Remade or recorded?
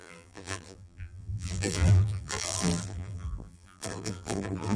remade